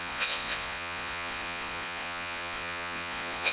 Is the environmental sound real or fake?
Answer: fake